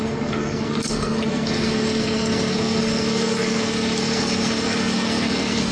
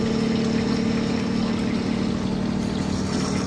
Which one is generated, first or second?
first